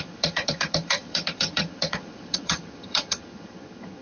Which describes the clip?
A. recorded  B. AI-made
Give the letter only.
B